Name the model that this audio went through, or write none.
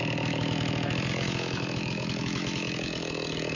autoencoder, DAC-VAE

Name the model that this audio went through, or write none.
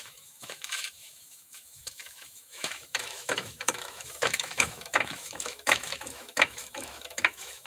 autoencoder, DAC-VAE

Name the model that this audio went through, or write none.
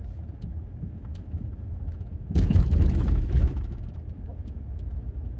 autoencoder, DAC-VAE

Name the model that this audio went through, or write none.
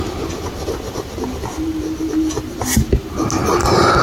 none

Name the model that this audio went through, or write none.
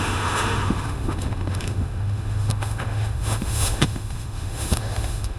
autoencoder, DAC-VAE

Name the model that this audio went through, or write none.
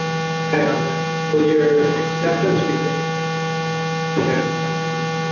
none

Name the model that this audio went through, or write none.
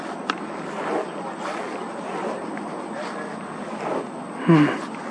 none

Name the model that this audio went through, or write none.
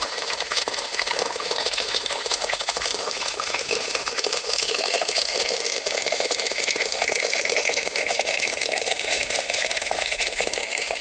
autoencoder, DAC-VAE